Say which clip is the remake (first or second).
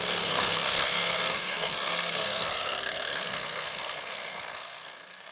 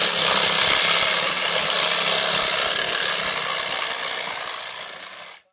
first